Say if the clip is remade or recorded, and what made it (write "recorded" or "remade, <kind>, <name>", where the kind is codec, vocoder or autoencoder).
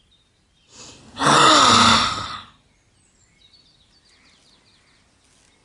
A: recorded